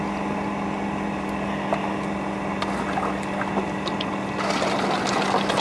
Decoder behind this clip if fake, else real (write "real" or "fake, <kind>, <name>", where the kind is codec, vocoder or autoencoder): real